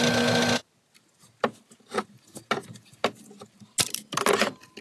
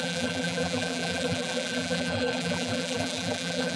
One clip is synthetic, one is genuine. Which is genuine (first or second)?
first